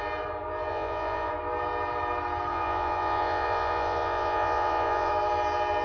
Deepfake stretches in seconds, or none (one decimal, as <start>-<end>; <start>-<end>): 0.7-1.3; 2.5-5.1